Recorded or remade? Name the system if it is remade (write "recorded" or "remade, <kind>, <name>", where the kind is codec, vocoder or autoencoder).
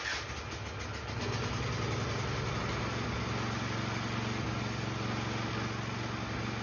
recorded